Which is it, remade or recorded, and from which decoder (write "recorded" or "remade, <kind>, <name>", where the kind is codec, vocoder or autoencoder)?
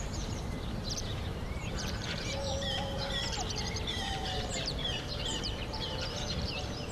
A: remade, vocoder, BigVGAN v2